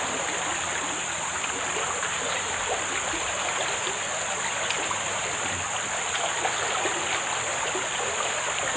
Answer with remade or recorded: recorded